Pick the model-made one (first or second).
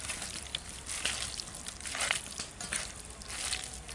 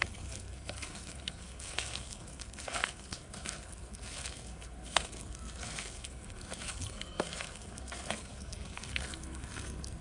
second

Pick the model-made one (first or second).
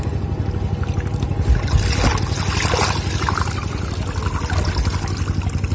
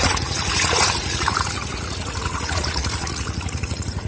second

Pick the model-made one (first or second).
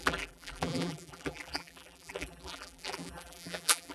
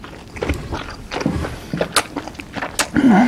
first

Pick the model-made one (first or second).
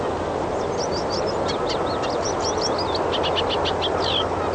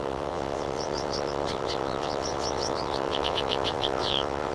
second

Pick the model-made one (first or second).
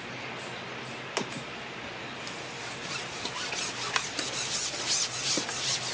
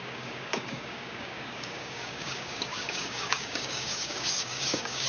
second